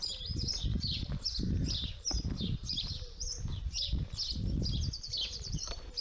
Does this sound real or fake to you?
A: fake